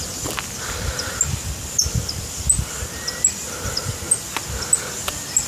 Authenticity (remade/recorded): recorded